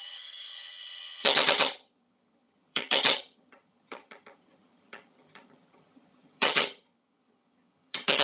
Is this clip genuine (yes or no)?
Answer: no